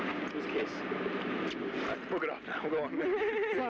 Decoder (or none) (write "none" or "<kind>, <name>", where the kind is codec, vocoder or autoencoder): none